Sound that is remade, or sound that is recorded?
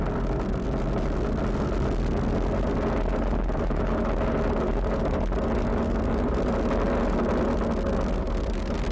recorded